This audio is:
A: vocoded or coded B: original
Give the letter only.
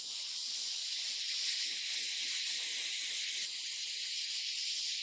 B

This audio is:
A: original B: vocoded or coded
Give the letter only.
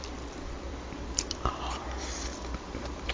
B